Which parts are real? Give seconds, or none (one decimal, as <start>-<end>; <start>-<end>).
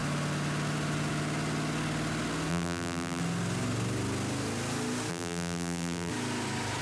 0.0-2.5; 3.2-5.1; 6.1-6.8